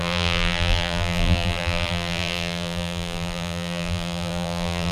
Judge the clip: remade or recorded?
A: remade